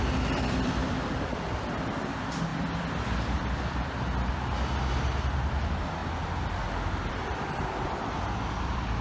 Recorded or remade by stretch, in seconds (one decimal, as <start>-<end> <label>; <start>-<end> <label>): 0.0-2.5 remade; 2.5-4.3 recorded; 4.3-6.0 remade; 6.0-7.1 recorded; 7.1-9.0 remade